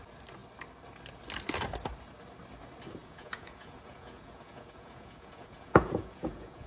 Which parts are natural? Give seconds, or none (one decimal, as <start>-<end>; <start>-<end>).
0.0-3.0